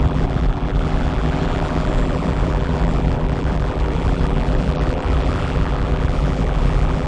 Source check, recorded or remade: remade